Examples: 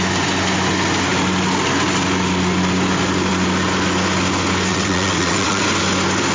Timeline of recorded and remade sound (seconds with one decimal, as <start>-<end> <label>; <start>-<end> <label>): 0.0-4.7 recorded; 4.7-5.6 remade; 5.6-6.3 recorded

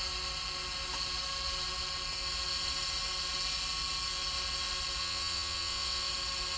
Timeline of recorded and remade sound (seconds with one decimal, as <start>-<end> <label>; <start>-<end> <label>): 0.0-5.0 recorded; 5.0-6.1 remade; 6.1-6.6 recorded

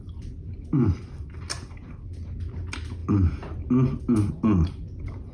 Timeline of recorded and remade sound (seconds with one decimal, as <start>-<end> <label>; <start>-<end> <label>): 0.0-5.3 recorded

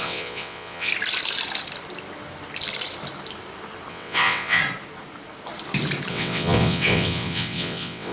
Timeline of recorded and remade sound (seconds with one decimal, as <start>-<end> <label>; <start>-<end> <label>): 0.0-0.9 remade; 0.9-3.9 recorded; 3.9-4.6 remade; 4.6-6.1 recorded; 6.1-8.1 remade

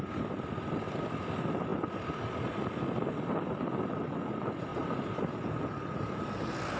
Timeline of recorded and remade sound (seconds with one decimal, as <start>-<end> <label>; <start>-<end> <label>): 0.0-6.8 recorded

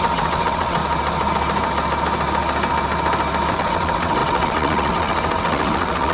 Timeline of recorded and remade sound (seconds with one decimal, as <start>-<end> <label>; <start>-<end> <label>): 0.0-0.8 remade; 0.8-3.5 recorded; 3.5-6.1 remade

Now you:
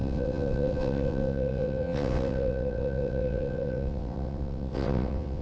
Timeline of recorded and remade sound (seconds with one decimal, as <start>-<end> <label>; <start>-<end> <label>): 0.0-5.4 remade